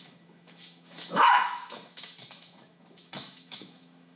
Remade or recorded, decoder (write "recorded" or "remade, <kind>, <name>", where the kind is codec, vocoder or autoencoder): remade, autoencoder, DAC-VAE